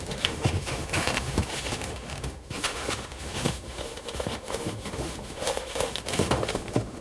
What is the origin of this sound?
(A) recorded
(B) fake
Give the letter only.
B